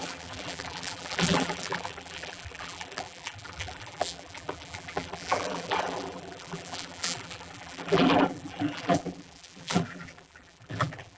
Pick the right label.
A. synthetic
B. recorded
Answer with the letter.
A